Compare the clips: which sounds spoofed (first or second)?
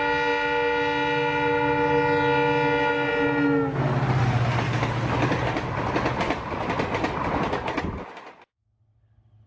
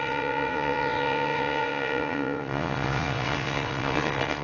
second